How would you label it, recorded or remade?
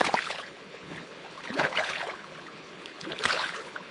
remade